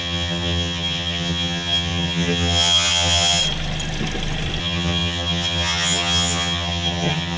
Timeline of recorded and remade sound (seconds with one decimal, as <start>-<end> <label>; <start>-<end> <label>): 0.0-3.4 remade; 3.4-4.6 recorded; 4.6-7.4 remade